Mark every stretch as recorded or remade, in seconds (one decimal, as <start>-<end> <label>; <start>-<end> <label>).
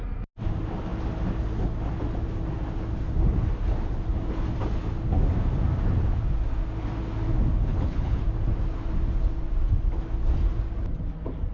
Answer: 0.0-7.7 recorded; 7.7-8.2 remade; 8.2-11.5 recorded